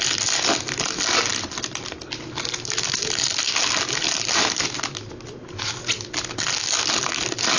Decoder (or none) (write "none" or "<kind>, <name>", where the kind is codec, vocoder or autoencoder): none